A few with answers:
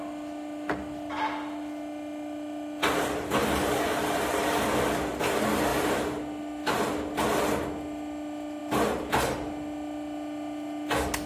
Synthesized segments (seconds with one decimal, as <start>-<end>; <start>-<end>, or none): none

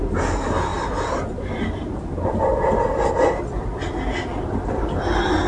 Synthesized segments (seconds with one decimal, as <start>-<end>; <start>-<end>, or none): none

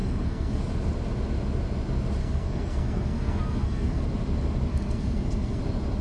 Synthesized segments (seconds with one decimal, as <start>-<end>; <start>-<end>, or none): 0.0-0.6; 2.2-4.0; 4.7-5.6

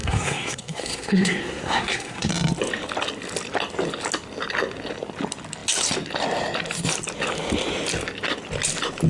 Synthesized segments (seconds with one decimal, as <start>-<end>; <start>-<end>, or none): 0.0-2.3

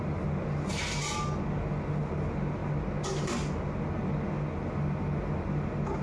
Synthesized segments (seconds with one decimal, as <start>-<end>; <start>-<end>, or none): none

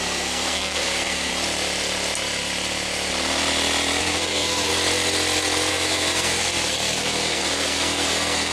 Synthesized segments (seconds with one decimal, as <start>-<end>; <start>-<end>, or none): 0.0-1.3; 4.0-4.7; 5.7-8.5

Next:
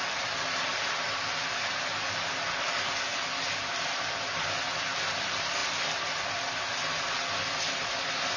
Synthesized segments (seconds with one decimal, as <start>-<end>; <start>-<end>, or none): none

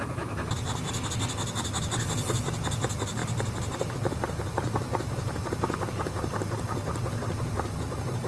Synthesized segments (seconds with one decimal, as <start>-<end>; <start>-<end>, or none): none